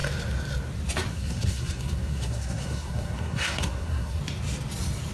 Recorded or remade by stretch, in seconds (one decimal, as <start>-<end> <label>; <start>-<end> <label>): 0.0-1.1 recorded; 1.1-4.2 remade; 4.2-5.1 recorded